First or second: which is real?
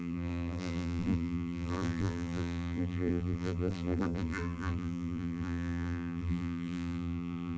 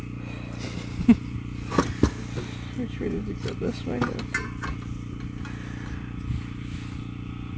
second